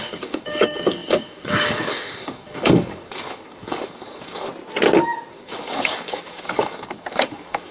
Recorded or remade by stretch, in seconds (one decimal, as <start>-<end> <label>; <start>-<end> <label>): 0.0-4.5 remade; 4.5-5.3 recorded; 5.3-7.7 remade